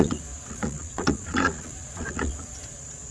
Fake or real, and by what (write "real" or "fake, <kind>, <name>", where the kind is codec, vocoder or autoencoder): fake, vocoder, Vocos